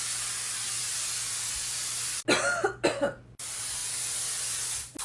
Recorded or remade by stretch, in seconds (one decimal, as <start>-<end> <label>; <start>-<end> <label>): 0.0-5.0 recorded

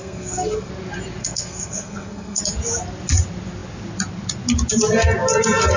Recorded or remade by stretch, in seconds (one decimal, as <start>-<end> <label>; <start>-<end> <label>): 0.0-0.7 remade; 0.7-1.2 recorded; 1.2-2.4 remade; 2.4-5.8 recorded

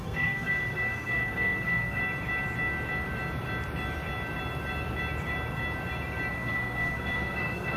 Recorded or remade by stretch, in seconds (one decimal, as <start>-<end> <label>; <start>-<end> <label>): 0.0-2.0 remade; 2.0-6.3 recorded; 6.3-7.8 remade

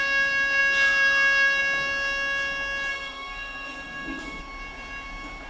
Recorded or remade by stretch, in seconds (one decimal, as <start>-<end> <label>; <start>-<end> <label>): 0.0-2.9 recorded; 2.9-4.4 remade; 4.4-5.5 recorded

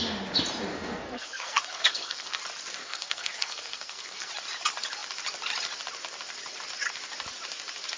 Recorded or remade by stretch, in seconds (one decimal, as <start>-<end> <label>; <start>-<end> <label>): 0.0-0.7 recorded; 0.7-2.4 remade; 2.4-2.8 recorded; 2.8-4.3 remade; 4.3-8.0 recorded

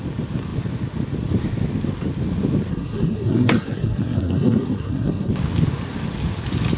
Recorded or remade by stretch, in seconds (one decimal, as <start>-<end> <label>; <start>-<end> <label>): 0.0-2.7 recorded; 2.7-5.3 remade; 5.3-6.8 recorded

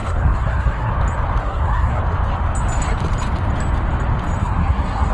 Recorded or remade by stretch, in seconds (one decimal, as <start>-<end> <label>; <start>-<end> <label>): 0.0-0.9 remade; 0.9-1.4 recorded; 1.4-2.0 remade; 2.0-4.4 recorded; 4.4-5.1 remade

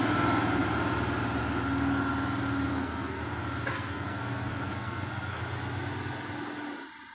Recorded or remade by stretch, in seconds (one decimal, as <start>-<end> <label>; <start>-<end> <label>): 0.0-2.7 recorded; 2.7-3.2 remade; 3.2-3.7 recorded; 3.7-5.4 remade; 5.4-7.1 recorded